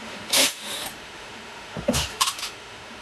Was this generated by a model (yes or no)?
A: yes